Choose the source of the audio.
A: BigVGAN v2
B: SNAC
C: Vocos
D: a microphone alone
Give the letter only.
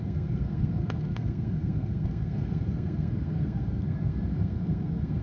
B